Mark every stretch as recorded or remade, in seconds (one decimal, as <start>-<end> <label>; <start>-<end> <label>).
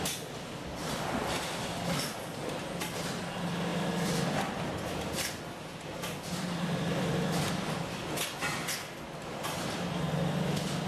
0.0-3.7 recorded; 3.7-8.1 remade; 8.1-10.9 recorded